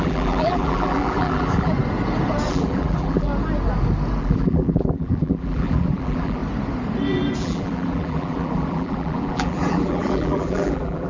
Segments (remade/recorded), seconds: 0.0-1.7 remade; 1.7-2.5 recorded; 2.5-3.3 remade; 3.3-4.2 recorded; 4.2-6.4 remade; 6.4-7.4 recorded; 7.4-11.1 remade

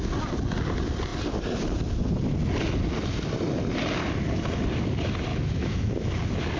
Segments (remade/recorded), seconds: 0.0-5.3 recorded; 5.3-5.9 remade; 5.9-6.6 recorded